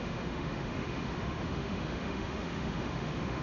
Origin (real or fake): fake